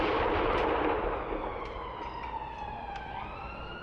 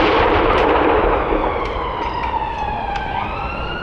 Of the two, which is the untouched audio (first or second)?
first